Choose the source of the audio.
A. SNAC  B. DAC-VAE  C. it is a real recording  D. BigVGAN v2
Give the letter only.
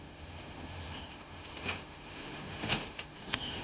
B